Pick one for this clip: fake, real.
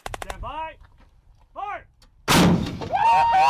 real